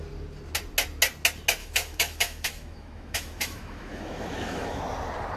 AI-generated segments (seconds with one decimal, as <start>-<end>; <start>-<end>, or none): 1.6-4.8